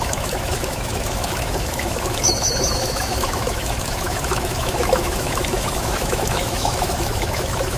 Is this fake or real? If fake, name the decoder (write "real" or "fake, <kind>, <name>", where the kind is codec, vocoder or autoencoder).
fake, autoencoder, DAC-VAE